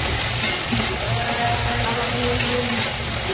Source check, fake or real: real